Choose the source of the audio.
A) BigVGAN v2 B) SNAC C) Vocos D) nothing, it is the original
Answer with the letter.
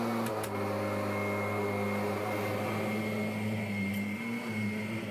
D